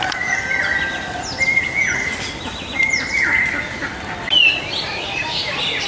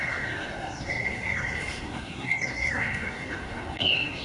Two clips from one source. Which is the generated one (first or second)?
second